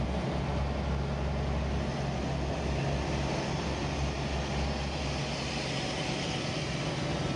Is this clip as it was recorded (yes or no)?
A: yes